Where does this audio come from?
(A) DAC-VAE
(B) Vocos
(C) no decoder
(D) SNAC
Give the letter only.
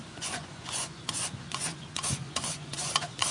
B